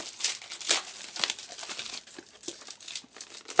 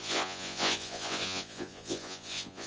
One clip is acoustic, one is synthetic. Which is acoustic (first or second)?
first